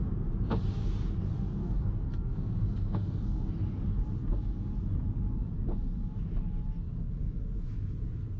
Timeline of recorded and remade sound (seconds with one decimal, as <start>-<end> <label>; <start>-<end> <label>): 0.0-1.6 recorded; 1.6-3.5 remade; 3.5-8.4 recorded